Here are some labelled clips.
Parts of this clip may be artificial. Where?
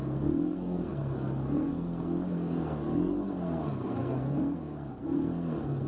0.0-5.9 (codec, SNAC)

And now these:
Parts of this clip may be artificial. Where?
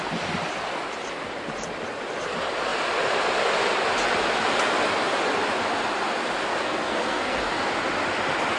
6.5-7.4 (codec, SNAC)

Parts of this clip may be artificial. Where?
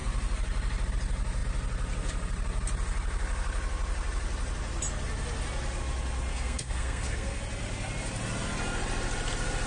6.3-7.4 (codec, SNAC)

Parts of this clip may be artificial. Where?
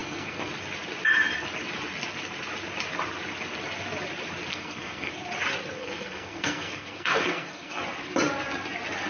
0.0-0.5 (codec, SNAC); 4.5-5.1; 5.8-7.8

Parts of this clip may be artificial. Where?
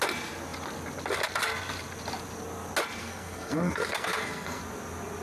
3.0-4.6 (codec, SNAC)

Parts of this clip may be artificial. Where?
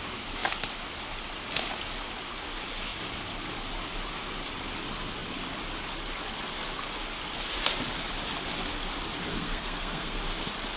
9.3-10.2 (codec, SNAC)